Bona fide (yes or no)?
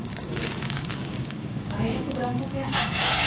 no